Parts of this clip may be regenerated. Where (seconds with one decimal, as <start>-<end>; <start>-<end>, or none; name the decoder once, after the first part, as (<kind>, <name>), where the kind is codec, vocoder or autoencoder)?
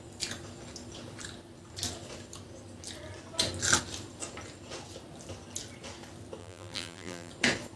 6.4-7.3 (vocoder, BigVGAN v2)